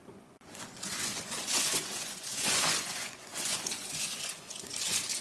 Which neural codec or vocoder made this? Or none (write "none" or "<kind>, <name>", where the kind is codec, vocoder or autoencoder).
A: vocoder, Vocos